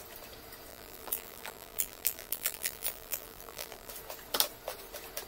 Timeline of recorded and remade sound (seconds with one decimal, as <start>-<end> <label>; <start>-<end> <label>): 0.0-0.7 recorded; 0.7-3.9 remade; 3.9-5.3 recorded